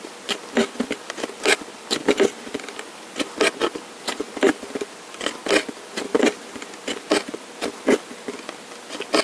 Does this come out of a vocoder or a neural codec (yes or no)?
no